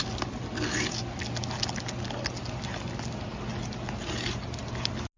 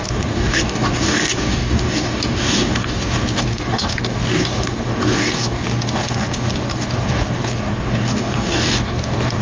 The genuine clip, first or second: first